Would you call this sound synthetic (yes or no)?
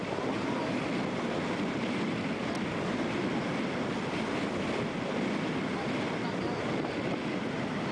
no